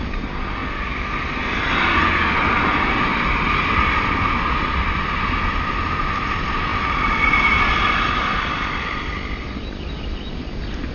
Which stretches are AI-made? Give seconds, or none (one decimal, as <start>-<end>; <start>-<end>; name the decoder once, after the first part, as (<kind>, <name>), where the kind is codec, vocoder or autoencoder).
none